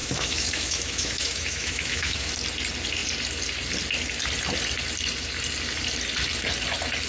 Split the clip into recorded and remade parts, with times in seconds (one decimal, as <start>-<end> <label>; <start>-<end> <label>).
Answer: 0.0-2.3 remade; 2.3-7.1 recorded